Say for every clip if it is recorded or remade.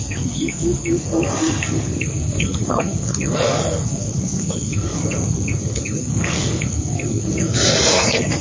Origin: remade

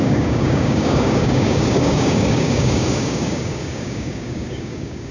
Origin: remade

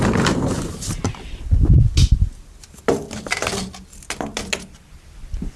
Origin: recorded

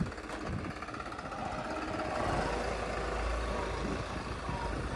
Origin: recorded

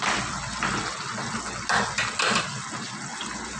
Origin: recorded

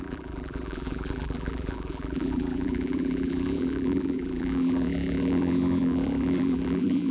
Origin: remade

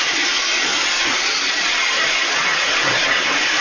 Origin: remade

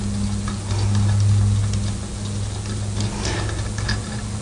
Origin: recorded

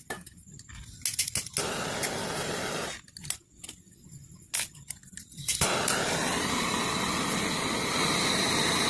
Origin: recorded